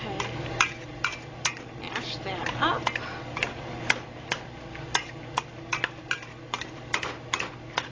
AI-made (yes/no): no